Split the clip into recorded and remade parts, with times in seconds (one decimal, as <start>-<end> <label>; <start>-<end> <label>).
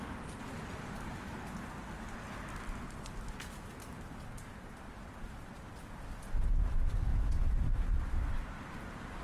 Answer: 0.0-7.1 recorded; 7.1-9.2 remade